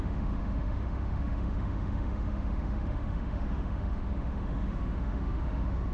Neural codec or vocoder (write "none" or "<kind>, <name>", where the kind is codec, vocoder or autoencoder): autoencoder, DAC-VAE